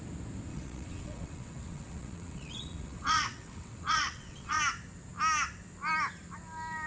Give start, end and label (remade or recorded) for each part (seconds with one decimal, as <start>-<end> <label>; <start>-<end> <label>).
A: 0.0-0.5 recorded; 0.5-4.6 remade; 4.6-6.9 recorded